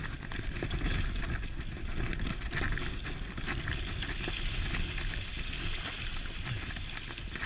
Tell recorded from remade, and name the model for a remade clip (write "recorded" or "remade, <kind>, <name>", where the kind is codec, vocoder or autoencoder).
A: recorded